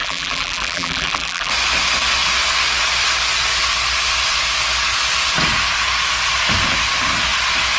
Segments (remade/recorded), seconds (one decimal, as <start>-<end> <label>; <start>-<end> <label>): 0.0-1.5 remade; 1.5-7.8 recorded